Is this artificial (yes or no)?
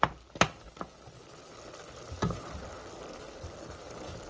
no